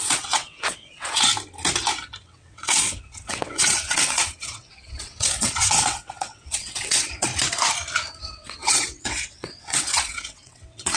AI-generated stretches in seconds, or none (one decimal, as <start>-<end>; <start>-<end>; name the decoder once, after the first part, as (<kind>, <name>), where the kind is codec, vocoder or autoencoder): 0.0-1.3 (vocoder, WaveNeXt); 2.2-7.3; 8.2-11.0